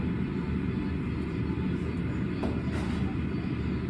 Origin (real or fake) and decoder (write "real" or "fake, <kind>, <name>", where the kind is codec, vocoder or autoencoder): real